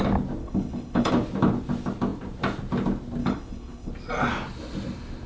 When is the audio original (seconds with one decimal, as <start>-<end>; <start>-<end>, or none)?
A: 0.0-0.4; 1.1-3.2; 3.9-5.3